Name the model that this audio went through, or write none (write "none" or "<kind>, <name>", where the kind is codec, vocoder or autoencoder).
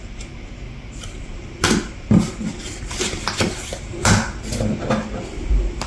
none